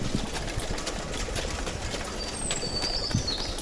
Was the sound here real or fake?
real